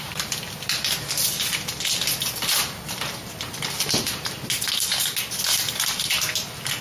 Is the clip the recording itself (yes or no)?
yes